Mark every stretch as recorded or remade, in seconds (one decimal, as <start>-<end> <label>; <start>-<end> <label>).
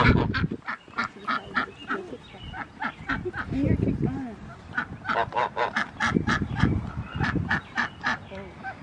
0.0-8.8 recorded